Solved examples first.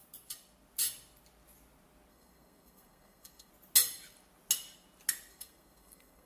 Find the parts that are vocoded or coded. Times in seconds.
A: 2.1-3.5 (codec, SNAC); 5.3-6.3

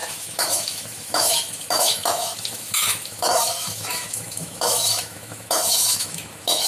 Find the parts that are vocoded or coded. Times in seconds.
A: 0.0-6.7 (autoencoder, DAC-VAE)

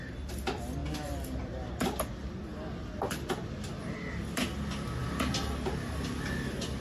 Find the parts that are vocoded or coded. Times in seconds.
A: none

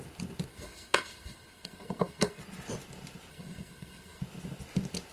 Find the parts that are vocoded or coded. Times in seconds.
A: 0.5-2.4 (codec, SNAC); 3.3-4.2

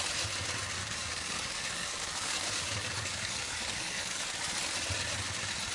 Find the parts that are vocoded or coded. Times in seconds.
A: 0.8-4.2 (codec, DAC)

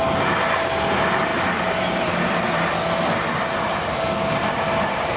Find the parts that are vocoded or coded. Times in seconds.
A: none

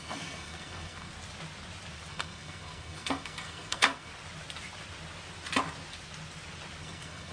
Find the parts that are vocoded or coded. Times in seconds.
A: 0.0-1.1 (codec, SNAC); 2.1-4.1; 6.8-7.3

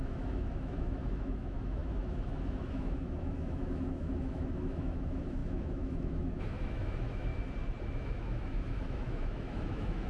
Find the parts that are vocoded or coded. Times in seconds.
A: 0.0-7.3 (autoencoder, DAC-VAE); 7.9-10.1